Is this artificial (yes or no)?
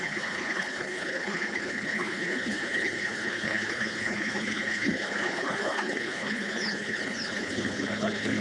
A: yes